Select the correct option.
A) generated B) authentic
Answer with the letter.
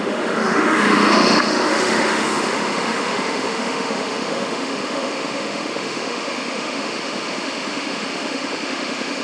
A